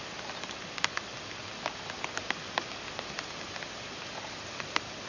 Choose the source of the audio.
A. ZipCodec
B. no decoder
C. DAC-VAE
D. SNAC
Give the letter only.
B